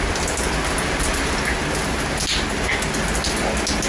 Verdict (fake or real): real